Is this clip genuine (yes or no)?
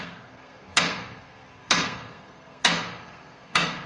no